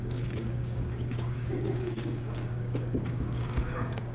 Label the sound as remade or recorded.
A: remade